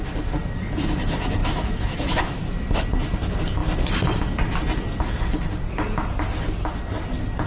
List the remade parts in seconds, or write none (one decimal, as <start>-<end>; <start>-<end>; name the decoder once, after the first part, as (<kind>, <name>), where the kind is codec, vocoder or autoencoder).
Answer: 1.4-2.4 (autoencoder, DAC-VAE)